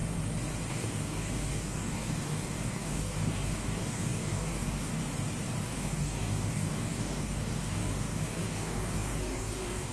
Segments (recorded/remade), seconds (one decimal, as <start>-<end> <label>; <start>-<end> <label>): 0.0-0.7 recorded; 0.7-5.0 remade; 5.0-5.6 recorded; 5.6-9.9 remade